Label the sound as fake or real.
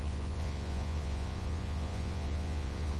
fake